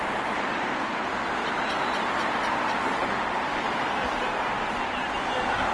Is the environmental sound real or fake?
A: real